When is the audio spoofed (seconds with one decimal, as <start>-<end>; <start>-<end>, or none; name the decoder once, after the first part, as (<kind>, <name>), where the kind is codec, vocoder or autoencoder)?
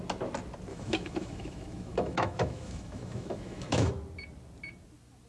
0.7-3.9 (autoencoder, DAC-VAE)